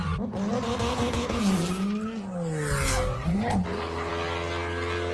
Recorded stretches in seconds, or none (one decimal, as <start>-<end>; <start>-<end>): 0.0-0.9; 1.4-3.3; 4.1-5.1

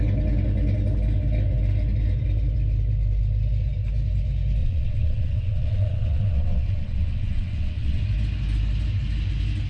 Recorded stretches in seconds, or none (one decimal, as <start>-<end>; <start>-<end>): 0.0-4.6; 8.0-9.7

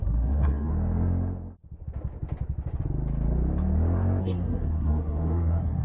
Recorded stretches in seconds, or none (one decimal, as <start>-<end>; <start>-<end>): 0.7-4.2

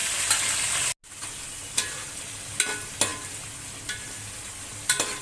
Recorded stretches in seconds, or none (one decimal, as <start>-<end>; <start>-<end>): 0.0-5.2